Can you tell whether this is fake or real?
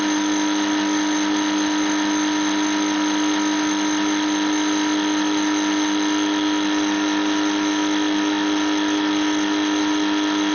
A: real